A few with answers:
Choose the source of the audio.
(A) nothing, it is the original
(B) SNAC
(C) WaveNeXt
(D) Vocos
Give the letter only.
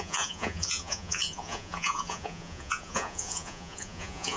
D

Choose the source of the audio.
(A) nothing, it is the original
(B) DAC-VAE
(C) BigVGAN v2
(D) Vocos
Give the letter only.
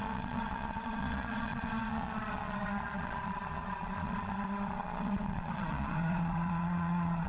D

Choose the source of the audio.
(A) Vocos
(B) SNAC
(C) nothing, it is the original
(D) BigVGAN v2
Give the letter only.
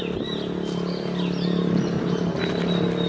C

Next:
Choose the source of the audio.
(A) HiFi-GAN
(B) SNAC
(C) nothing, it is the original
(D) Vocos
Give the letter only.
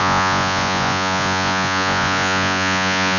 D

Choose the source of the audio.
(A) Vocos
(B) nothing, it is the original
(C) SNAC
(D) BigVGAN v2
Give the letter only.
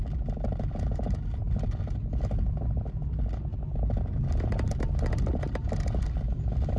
B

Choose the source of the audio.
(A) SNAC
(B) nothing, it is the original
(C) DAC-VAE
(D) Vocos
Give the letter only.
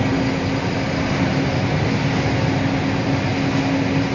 B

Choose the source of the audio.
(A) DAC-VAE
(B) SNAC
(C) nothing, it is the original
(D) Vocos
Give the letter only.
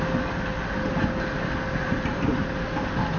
C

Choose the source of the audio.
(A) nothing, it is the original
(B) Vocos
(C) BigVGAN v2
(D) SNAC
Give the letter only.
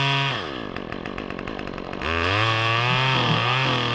A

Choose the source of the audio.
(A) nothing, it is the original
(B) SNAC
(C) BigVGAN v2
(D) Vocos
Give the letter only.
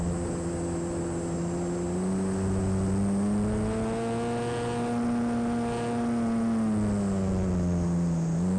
A